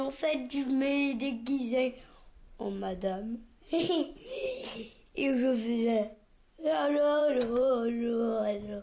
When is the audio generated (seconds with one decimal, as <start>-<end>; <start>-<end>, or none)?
7.2-7.7